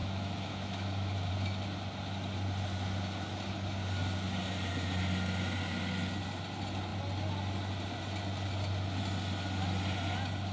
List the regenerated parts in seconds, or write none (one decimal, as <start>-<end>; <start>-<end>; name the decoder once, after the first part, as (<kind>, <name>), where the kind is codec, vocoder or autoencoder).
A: 0.0-1.3 (autoencoder, DAC-VAE)